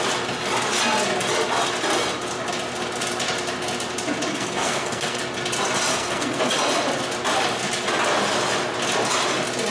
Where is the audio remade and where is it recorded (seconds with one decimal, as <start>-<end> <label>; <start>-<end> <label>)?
0.0-4.3 recorded; 4.3-5.2 remade; 5.2-5.9 recorded; 5.9-6.4 remade; 6.4-9.7 recorded